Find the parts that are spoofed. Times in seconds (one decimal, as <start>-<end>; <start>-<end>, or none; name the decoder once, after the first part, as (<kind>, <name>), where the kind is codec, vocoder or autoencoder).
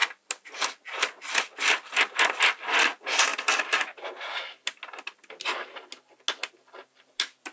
none